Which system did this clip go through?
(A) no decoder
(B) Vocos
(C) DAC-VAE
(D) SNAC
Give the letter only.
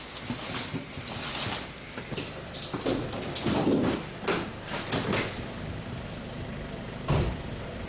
A